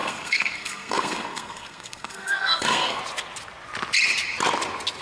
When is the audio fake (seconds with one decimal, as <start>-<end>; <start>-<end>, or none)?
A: 0.0-3.0